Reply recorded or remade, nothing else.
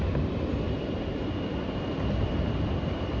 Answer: recorded